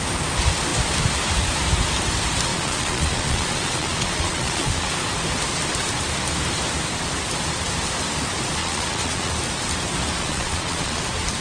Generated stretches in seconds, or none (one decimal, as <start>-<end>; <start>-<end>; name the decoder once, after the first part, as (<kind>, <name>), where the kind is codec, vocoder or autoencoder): 2.5-4.9 (vocoder, Vocos); 8.6-9.3; 10.2-11.0